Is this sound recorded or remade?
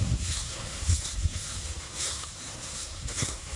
remade